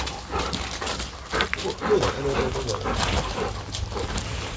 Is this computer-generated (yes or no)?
no